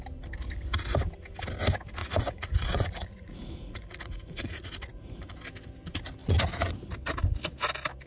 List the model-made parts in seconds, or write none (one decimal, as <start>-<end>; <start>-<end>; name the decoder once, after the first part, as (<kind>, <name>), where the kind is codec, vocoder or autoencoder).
2.0-5.4 (vocoder, Vocos); 6.2-6.7